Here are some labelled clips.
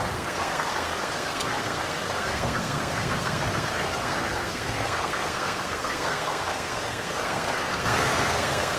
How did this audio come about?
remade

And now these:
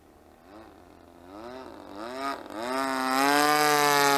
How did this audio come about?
recorded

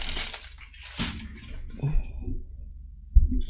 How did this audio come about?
recorded